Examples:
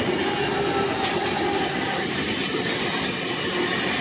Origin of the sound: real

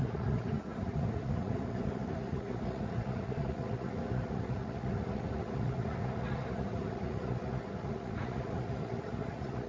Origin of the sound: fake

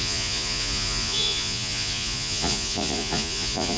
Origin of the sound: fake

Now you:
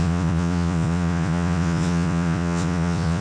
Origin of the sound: fake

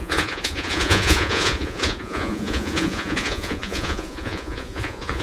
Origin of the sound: fake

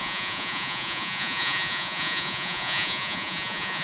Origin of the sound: fake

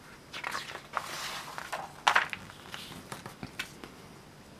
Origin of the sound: real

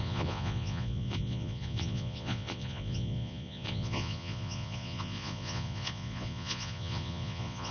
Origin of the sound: fake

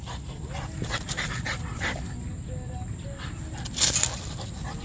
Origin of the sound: real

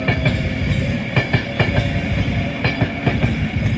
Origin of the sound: real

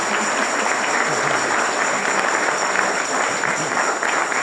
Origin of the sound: real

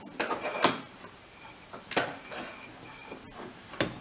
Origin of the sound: real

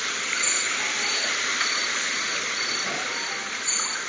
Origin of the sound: real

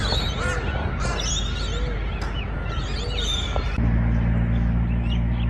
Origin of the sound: real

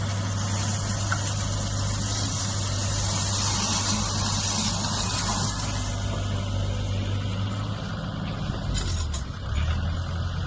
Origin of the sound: real